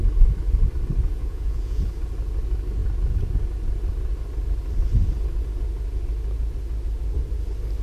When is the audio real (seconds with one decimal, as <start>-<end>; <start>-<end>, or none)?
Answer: 0.0-1.2; 1.8-7.8